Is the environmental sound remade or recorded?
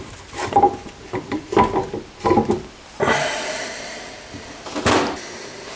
recorded